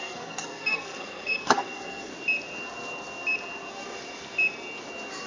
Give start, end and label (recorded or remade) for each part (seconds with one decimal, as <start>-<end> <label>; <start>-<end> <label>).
0.0-2.1 remade; 2.1-5.3 recorded